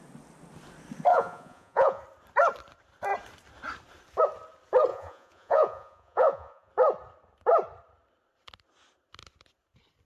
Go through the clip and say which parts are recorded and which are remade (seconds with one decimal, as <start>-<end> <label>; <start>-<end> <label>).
0.0-1.1 recorded; 1.1-2.0 remade; 2.0-4.9 recorded; 4.9-6.7 remade; 6.7-10.0 recorded